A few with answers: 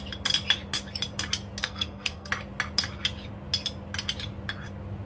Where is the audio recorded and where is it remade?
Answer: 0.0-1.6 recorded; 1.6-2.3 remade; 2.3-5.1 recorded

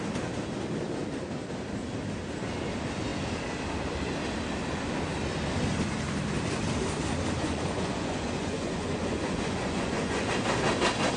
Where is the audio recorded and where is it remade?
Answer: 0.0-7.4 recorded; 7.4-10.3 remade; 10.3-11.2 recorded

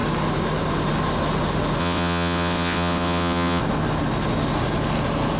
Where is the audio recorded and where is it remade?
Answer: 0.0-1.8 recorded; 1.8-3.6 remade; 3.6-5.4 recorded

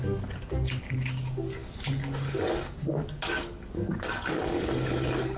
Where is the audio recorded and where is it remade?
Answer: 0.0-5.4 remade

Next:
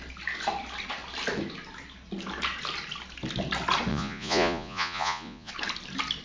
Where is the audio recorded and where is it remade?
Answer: 0.0-3.9 recorded; 3.9-5.5 remade; 5.5-6.2 recorded

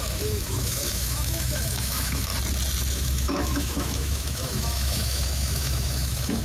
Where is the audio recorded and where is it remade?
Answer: 0.0-2.3 remade; 2.3-2.9 recorded; 2.9-6.4 remade

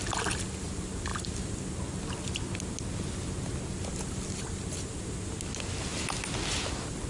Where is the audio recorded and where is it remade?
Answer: 0.0-7.1 recorded